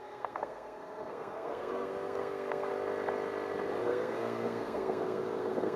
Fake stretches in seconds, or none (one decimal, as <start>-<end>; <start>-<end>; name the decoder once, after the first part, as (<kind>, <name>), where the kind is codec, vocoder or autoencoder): 0.0-2.7 (codec, SNAC); 3.8-5.8